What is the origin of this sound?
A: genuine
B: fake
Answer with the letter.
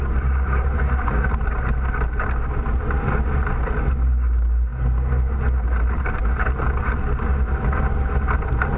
A